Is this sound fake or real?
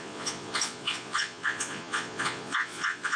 fake